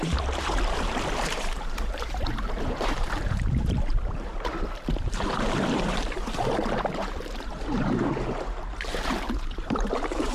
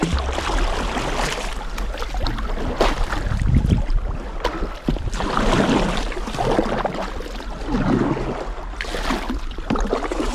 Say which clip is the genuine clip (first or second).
second